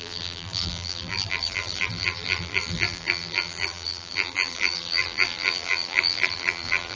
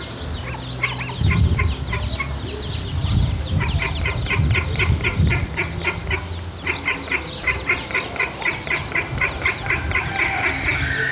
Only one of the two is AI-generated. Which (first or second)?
first